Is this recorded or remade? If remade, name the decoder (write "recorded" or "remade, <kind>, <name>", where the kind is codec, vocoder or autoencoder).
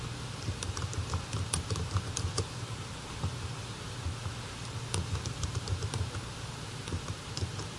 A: remade, vocoder, BigVGAN v2